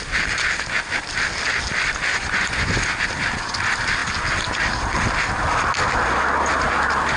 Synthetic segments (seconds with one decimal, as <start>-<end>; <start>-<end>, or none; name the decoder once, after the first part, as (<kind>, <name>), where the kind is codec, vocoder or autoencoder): 2.1-2.8 (vocoder, Vocos)